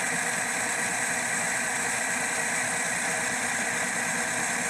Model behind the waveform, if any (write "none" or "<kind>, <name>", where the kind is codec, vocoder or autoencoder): none